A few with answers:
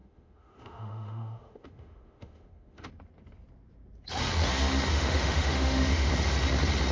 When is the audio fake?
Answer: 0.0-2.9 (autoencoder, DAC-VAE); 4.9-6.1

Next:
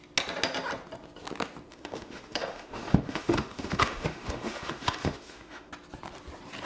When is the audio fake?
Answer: 1.7-5.7 (autoencoder, DAC-VAE)